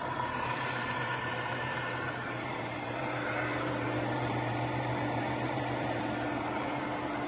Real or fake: fake